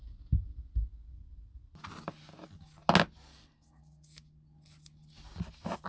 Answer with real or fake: real